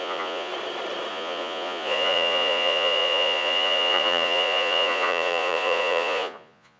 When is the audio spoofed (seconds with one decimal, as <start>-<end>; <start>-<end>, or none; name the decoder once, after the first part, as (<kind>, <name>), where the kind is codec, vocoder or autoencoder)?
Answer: 0.0-0.5 (vocoder, Vocos); 1.1-6.8